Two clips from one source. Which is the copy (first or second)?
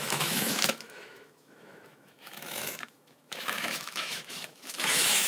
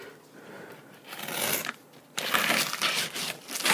first